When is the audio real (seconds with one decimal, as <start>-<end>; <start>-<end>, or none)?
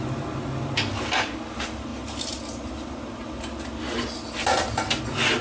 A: 0.0-5.4